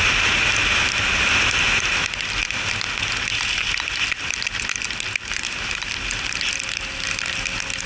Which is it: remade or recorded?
recorded